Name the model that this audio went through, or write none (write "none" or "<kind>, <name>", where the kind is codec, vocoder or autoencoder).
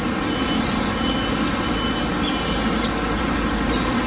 none